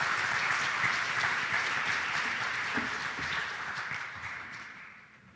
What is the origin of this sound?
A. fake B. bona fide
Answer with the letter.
A